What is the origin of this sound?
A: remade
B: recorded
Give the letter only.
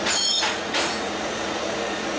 A